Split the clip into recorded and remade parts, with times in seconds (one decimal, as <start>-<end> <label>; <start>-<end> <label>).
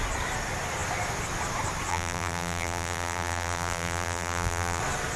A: 0.0-1.9 recorded; 1.9-4.8 remade; 4.8-5.2 recorded